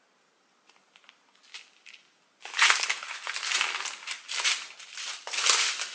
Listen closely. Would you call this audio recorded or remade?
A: recorded